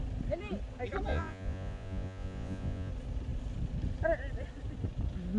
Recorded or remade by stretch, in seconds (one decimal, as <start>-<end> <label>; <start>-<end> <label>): 0.0-1.1 recorded; 1.1-2.9 remade; 2.9-5.4 recorded

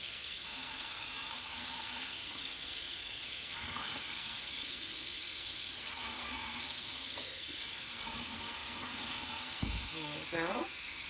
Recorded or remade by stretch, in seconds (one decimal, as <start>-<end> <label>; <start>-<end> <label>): 0.0-11.1 remade